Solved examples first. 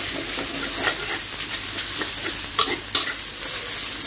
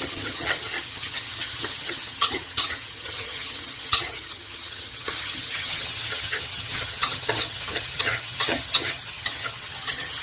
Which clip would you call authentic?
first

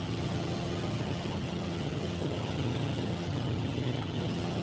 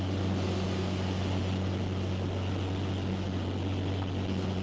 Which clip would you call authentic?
second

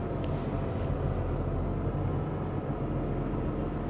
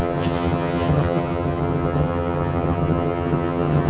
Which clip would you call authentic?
first